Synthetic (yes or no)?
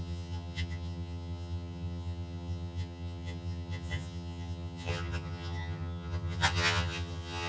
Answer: yes